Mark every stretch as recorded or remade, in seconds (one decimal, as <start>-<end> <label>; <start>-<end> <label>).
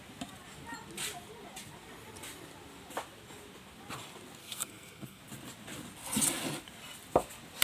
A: 0.0-4.4 recorded; 4.4-5.2 remade; 5.2-7.6 recorded